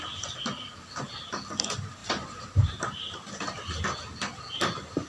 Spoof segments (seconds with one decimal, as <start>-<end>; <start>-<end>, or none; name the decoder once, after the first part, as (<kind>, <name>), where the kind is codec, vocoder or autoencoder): 2.0-2.7 (vocoder, BigVGAN v2)